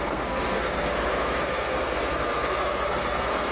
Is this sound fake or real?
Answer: fake